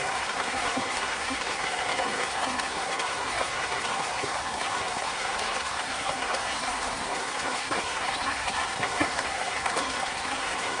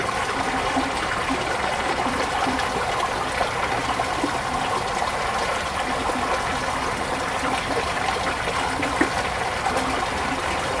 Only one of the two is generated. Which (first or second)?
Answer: first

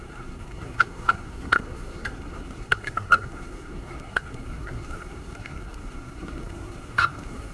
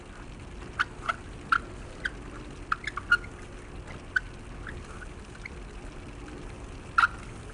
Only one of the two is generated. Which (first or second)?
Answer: first